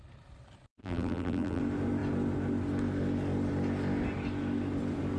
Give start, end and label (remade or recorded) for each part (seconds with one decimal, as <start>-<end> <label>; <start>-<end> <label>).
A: 0.0-0.8 recorded; 0.8-1.6 remade; 1.6-5.2 recorded